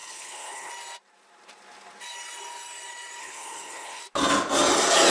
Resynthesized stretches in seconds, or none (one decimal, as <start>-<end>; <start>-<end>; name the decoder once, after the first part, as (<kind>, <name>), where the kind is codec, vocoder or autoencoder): 0.0-0.7 (codec, HILCodec); 3.2-4.0